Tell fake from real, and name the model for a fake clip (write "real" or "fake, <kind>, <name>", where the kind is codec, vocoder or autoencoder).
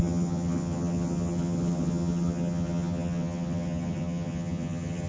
fake, vocoder, HiFi-GAN